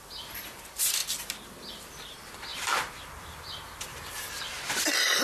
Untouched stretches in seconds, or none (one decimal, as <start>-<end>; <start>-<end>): 1.0-1.7